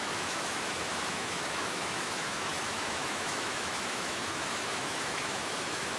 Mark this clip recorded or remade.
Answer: remade